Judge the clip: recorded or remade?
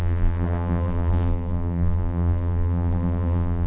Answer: remade